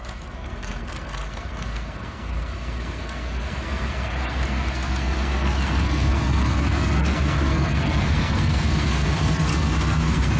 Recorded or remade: remade